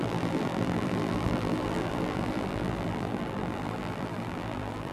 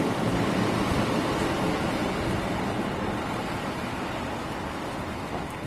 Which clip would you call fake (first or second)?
first